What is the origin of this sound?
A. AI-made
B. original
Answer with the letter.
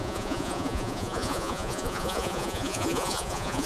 A